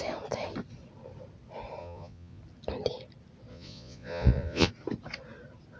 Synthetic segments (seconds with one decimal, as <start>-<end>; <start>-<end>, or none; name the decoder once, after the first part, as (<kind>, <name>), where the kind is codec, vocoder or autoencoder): 1.8-2.4 (vocoder, Vocos); 3.5-4.7